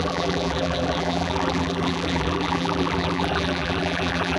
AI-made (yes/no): yes